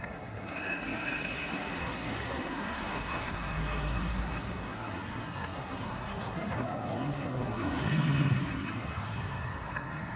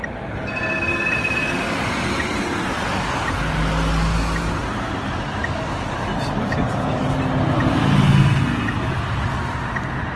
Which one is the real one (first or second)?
second